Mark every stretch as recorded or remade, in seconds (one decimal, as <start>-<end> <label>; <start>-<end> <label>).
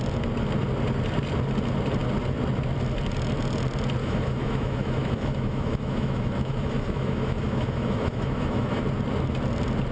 0.0-4.0 recorded; 4.0-8.8 remade; 8.8-9.9 recorded